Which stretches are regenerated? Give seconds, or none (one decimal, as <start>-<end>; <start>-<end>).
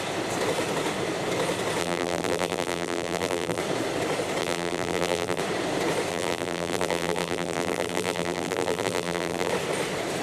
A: 1.8-3.6; 4.4-5.4; 6.1-9.5